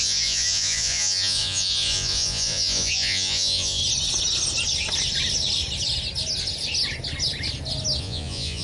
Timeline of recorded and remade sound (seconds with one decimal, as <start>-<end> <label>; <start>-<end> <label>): 0.0-3.8 remade; 3.8-8.0 recorded; 8.0-8.6 remade